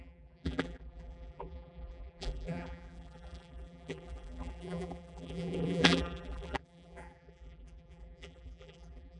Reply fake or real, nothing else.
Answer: fake